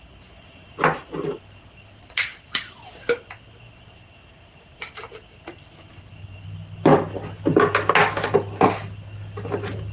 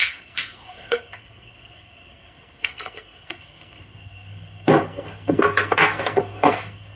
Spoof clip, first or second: second